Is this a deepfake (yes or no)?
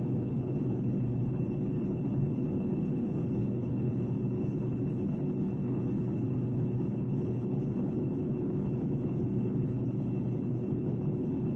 yes